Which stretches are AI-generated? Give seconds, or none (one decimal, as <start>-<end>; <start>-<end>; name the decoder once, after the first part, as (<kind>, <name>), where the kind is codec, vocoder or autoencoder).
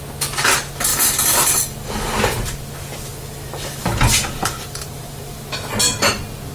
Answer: 0.9-1.9 (vocoder, BigVGAN v2); 3.1-5.4